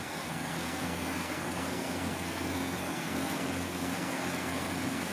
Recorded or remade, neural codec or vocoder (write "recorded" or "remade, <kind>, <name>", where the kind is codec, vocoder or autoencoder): remade, codec, SNAC